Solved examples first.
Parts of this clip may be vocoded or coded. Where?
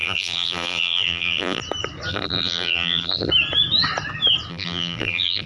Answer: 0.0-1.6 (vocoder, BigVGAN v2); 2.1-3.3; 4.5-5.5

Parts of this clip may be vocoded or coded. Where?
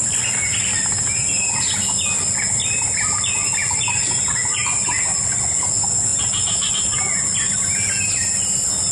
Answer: 6.1-6.7 (vocoder, BigVGAN v2)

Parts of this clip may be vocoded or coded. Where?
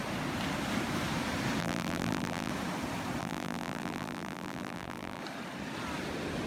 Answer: 1.6-2.5 (vocoder, BigVGAN v2); 3.2-5.2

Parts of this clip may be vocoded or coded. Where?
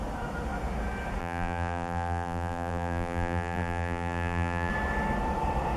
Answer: 1.2-4.7 (vocoder, BigVGAN v2)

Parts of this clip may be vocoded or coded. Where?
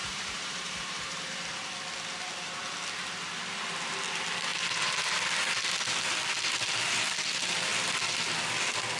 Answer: 0.0-1.3 (vocoder, BigVGAN v2)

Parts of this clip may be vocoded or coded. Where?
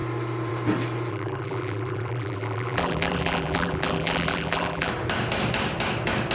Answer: 1.1-4.9 (vocoder, BigVGAN v2)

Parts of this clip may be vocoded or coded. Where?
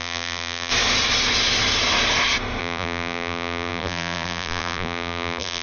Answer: 0.0-0.7 (vocoder, BigVGAN v2); 2.6-5.6